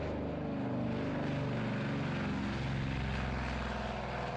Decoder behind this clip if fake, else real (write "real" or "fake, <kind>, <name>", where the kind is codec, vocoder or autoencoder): real